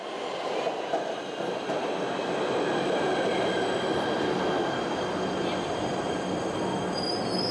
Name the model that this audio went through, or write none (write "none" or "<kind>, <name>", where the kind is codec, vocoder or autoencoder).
none